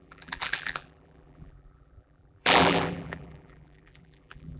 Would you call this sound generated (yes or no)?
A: yes